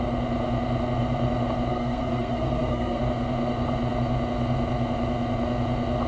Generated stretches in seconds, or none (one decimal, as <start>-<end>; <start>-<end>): 1.7-3.0